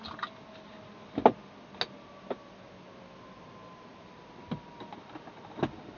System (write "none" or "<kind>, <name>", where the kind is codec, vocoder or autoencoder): none